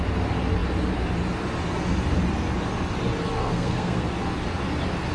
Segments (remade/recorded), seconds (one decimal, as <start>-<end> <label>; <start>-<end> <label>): 0.0-3.4 recorded; 3.4-4.1 remade; 4.1-5.1 recorded